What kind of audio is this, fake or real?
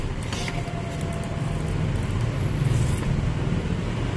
real